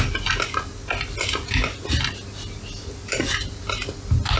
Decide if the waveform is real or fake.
real